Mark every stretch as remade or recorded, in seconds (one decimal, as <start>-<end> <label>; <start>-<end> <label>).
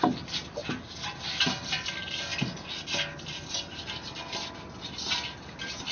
0.0-2.3 remade; 2.3-5.9 recorded